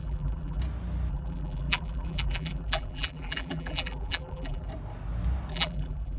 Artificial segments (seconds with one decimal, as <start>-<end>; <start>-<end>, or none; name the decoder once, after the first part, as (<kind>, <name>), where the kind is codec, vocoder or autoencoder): 0.0-0.6 (vocoder, BigVGAN v2); 1.1-4.7; 5.5-6.2